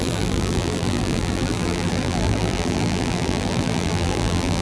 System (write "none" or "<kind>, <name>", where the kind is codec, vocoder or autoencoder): vocoder, BigVGAN v2